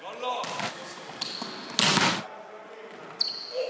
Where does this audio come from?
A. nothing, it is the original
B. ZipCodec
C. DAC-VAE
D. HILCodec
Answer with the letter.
A